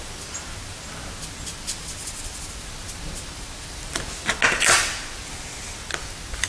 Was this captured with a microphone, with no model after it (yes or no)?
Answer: yes